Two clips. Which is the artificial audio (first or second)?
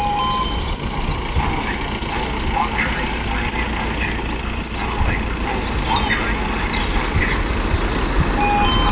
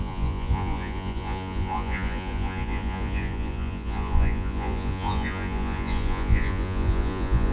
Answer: second